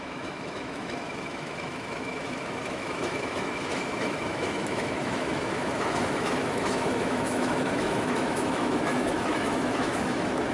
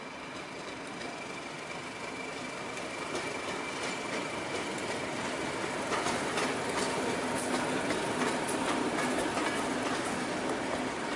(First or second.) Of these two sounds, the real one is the second